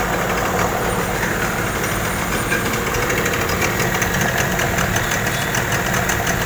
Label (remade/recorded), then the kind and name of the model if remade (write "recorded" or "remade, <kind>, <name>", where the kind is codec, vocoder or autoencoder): recorded